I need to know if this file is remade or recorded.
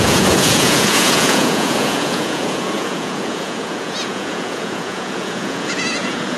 remade